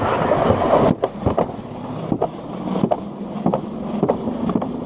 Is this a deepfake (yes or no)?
no